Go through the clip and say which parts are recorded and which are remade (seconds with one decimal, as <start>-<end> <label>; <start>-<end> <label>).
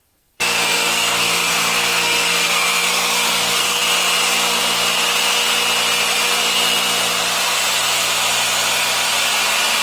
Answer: 0.0-3.8 remade; 3.8-9.8 recorded